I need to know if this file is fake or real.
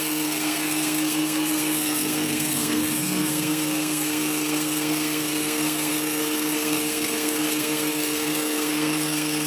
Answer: fake